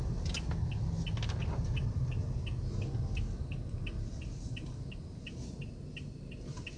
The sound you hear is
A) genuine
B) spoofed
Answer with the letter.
A